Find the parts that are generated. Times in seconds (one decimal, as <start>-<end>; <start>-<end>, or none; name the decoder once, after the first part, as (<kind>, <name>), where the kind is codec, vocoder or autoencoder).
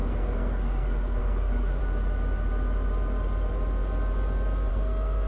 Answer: 0.0-1.8 (codec, SNAC); 4.7-5.3